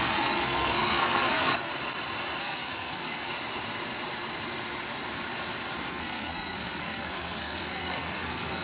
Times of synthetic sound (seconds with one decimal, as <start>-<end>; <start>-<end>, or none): 0.0-1.7; 2.4-3.3; 5.9-8.6